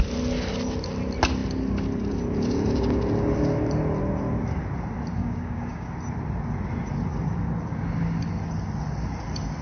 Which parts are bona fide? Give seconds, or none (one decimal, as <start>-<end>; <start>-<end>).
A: 0.0-5.2; 5.9-9.6